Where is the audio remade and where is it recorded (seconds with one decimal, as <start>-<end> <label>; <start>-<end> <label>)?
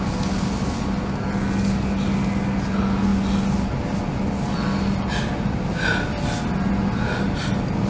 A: 0.0-7.9 recorded